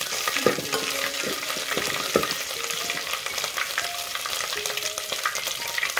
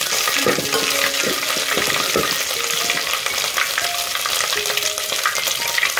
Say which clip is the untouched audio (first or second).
second